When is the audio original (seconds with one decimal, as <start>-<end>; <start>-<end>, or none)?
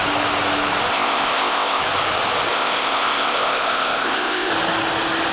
0.0-0.9; 1.8-2.5; 4.5-5.3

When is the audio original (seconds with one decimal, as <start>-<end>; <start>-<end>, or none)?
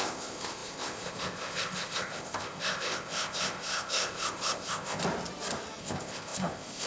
5.0-5.8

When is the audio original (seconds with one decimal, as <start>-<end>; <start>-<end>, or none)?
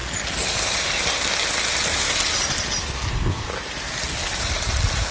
0.0-3.1; 3.5-5.1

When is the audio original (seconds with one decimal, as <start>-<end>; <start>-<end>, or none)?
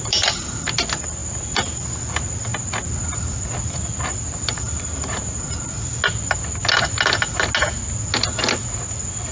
0.0-9.3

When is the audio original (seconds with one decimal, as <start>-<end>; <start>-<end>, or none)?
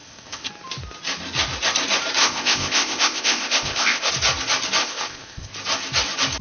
0.5-2.2; 4.1-4.8; 5.5-6.4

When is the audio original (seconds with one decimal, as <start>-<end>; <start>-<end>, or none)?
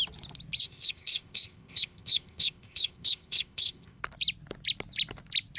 0.0-0.6; 4.0-5.6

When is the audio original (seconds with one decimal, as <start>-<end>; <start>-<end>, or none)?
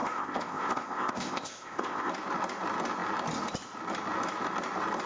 2.1-5.1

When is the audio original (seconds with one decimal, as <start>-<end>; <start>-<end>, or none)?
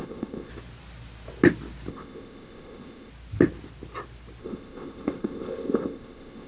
0.5-1.9; 3.1-4.4